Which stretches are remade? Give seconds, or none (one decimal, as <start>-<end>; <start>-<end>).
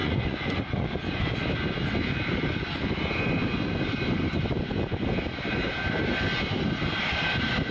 0.0-1.2